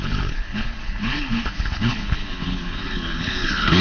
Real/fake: fake